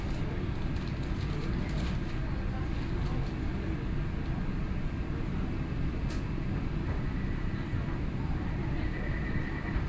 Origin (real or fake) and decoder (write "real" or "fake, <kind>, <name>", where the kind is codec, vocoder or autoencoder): real